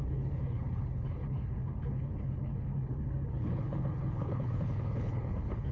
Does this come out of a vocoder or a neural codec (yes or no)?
yes